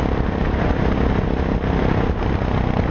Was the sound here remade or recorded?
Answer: recorded